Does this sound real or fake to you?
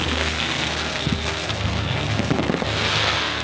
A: fake